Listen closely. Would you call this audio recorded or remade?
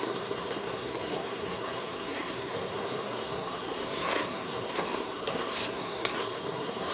remade